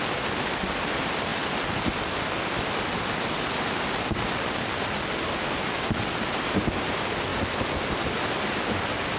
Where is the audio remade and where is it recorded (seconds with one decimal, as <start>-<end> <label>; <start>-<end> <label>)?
0.0-9.2 recorded